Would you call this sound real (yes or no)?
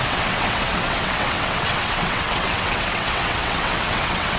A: no